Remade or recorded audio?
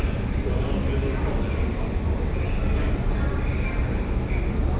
recorded